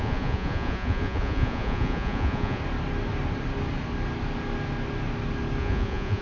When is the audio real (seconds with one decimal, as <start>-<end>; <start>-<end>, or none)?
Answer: 2.6-5.6